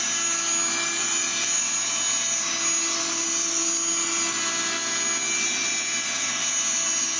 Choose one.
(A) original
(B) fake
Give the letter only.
A